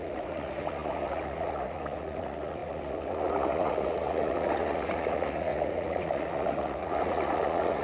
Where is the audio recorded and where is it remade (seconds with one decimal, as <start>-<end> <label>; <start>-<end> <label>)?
0.0-7.8 remade